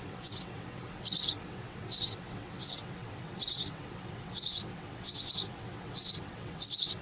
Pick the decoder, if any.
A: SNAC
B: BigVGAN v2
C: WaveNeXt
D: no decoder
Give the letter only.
C